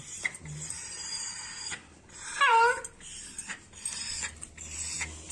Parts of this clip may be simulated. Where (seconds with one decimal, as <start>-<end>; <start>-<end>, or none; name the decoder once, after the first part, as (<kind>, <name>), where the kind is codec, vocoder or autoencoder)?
none